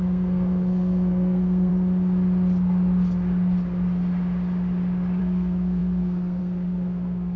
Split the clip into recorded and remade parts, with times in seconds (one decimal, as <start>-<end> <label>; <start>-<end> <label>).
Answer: 0.0-1.7 remade; 1.7-5.2 recorded; 5.2-7.4 remade